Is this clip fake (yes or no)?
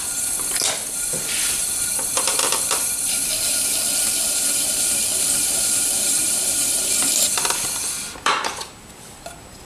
yes